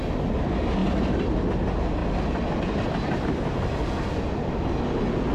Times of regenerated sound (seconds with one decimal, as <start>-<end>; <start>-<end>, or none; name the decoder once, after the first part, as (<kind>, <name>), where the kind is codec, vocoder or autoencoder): none